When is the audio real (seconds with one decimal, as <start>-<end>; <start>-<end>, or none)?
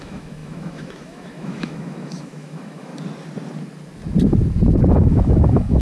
2.9-4.9